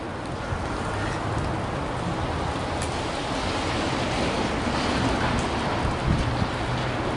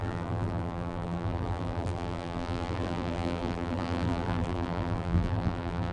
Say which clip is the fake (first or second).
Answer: second